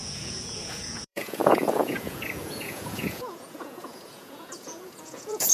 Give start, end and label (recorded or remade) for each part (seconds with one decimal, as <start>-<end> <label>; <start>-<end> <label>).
0.0-5.5 remade